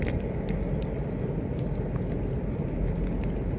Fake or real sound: real